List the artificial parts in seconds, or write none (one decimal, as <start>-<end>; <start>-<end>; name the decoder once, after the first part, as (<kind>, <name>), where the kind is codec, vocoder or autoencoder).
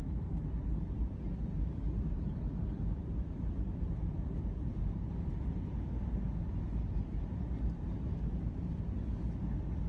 0.6-5.2 (vocoder, BigVGAN v2); 6.6-8.8